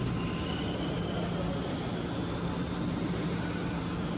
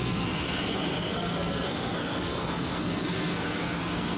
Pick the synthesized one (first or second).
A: second